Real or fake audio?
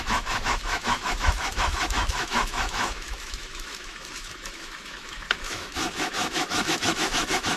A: fake